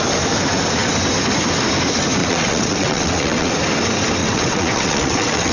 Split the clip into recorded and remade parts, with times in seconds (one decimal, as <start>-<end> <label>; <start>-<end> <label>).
0.0-2.2 recorded; 2.2-3.5 remade; 3.5-4.2 recorded; 4.2-5.5 remade